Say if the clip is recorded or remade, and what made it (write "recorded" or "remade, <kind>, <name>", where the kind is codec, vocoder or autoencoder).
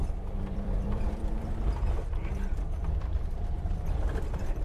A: remade, vocoder, BigVGAN v2